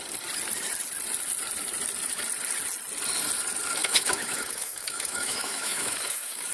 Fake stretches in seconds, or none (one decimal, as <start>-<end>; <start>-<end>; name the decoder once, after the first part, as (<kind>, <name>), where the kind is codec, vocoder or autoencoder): 3.8-6.5 (autoencoder, DAC-VAE)